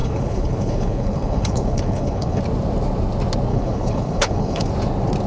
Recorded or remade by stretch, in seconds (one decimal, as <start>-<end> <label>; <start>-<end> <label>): 0.0-2.4 remade; 2.4-3.5 recorded; 3.5-4.7 remade; 4.7-5.3 recorded